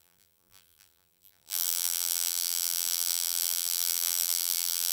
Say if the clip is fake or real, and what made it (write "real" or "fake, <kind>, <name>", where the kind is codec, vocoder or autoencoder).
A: fake, vocoder, BigVGAN v2